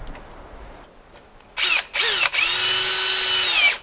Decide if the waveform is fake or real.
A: real